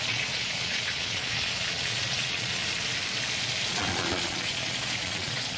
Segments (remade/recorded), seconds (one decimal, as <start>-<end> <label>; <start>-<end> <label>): 0.0-2.6 remade; 2.6-3.7 recorded; 3.7-5.6 remade